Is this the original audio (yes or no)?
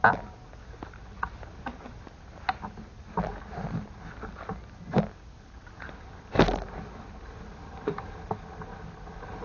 yes